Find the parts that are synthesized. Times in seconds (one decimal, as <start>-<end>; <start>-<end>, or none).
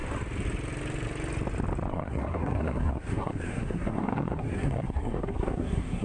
1.9-6.0